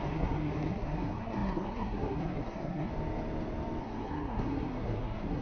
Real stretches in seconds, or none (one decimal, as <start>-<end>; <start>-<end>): 2.9-3.8